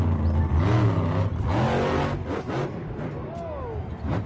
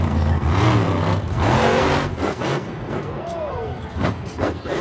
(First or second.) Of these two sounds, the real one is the first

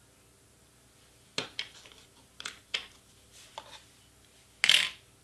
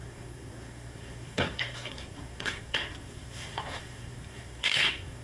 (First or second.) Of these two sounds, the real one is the first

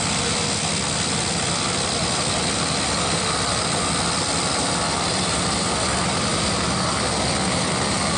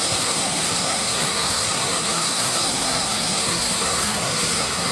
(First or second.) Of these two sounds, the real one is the first